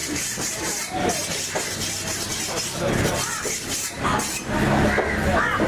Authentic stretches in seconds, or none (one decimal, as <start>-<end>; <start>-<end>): 1.3-5.7